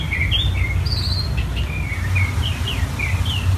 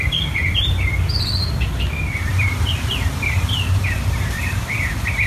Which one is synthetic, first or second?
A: second